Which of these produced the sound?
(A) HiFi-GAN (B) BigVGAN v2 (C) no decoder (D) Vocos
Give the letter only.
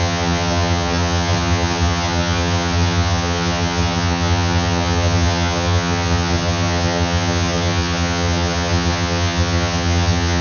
A